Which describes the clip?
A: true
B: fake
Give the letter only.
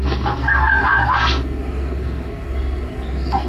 B